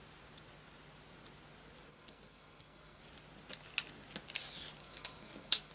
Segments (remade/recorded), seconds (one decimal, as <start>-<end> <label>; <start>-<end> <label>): 0.0-1.9 recorded; 1.9-3.0 remade; 3.0-4.8 recorded; 4.8-5.7 remade